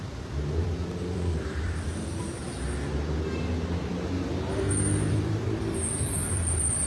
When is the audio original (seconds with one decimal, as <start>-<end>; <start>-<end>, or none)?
2.4-5.1

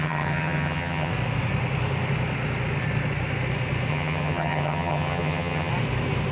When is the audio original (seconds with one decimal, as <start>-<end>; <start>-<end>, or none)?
1.1-3.9; 5.7-6.3

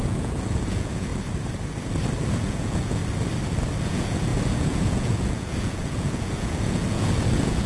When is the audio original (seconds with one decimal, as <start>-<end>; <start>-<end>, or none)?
1.1-2.3; 3.0-3.8

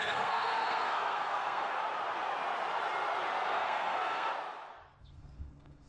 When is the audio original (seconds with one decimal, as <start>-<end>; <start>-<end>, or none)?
1.8-3.5; 4.3-5.0

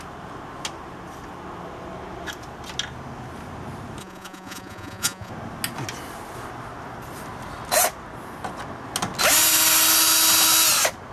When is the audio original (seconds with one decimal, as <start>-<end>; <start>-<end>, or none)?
0.0-4.0; 5.3-11.1

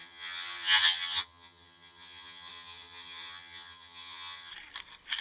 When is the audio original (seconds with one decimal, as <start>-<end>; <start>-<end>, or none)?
4.5-5.2

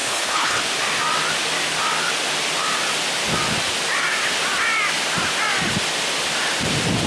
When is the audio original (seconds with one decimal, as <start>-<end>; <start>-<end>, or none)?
0.6-7.1